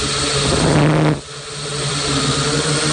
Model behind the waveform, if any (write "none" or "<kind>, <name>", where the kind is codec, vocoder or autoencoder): none